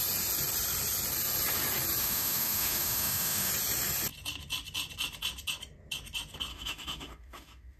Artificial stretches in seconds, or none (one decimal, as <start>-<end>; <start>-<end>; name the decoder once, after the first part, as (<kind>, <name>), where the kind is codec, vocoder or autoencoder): 2.0-3.5 (autoencoder, DAC-VAE); 6.5-7.8